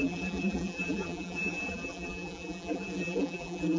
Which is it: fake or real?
fake